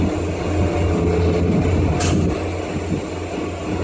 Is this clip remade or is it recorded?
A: recorded